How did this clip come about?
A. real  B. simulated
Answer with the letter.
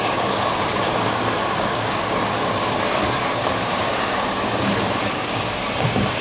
B